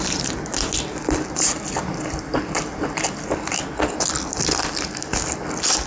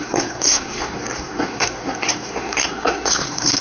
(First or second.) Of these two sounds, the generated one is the second